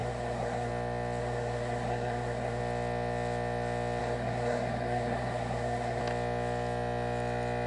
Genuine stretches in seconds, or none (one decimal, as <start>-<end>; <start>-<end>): 0.7-1.2; 2.6-4.0; 6.0-7.7